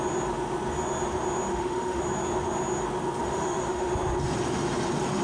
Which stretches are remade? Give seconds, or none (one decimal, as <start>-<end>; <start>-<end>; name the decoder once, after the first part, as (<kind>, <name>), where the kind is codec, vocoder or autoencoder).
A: 1.5-2.0 (autoencoder, DAC-VAE); 3.2-3.9